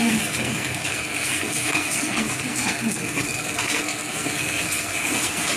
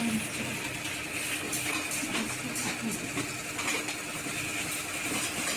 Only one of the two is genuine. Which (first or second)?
second